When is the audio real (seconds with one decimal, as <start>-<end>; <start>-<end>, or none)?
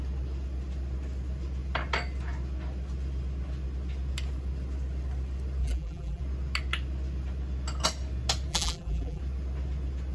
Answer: 0.0-5.6; 6.2-8.5; 9.2-10.1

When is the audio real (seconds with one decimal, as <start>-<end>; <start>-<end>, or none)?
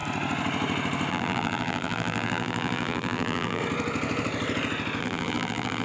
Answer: 0.0-1.1; 3.6-5.0